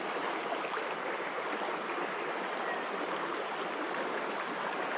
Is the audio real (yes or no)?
yes